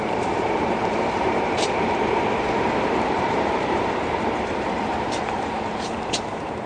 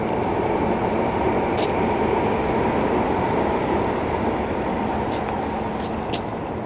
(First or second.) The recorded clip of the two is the second